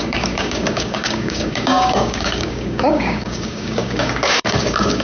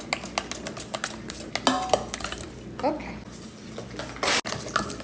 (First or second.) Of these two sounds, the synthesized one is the first